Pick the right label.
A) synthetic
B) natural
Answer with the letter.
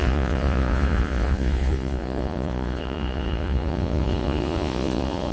A